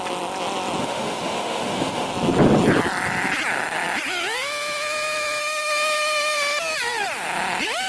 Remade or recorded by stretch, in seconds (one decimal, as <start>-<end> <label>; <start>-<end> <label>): 0.0-0.8 recorded; 0.8-2.1 remade; 2.1-5.4 recorded; 5.4-6.6 remade; 6.6-7.9 recorded

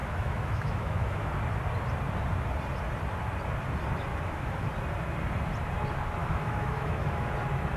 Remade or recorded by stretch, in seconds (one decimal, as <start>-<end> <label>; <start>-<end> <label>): 0.0-1.3 remade; 1.3-4.1 recorded; 4.1-4.7 remade; 4.7-6.2 recorded; 6.2-7.3 remade; 7.3-7.8 recorded